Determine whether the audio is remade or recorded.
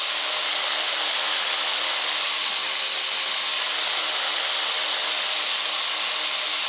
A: recorded